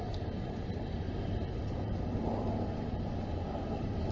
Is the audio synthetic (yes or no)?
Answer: yes